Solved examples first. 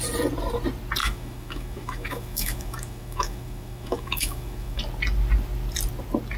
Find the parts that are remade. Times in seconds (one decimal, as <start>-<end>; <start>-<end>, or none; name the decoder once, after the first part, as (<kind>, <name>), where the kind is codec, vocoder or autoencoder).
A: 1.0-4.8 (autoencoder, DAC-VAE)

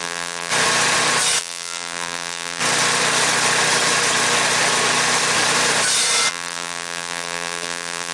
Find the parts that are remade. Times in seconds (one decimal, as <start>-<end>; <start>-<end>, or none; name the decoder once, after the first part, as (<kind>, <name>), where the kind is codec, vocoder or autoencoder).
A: 0.0-0.5 (vocoder, BigVGAN v2); 1.4-2.6; 6.3-8.1

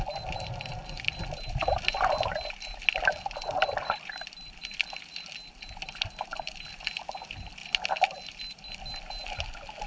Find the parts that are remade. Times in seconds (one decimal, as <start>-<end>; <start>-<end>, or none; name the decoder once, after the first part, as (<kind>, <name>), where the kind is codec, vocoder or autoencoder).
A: none

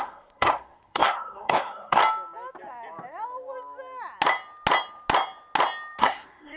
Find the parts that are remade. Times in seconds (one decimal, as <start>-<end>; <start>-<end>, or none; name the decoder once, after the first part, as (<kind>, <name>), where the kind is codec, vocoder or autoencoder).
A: 0.0-2.0 (codec, SNAC); 6.0-6.6

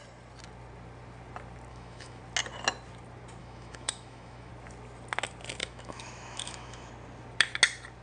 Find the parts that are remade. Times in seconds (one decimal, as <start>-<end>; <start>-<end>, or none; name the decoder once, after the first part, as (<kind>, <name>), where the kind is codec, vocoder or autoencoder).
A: 1.7-2.2 (autoencoder, DAC-VAE); 3.4-4.5; 5.6-6.9